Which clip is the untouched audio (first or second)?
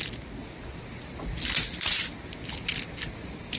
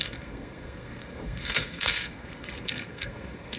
first